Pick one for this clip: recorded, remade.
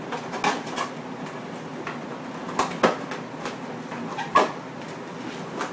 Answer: recorded